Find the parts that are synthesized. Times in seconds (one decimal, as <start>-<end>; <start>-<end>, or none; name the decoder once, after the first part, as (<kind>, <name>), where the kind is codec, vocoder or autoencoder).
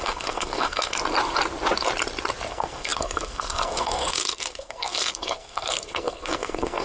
0.0-1.0 (codec, SNAC); 2.5-6.8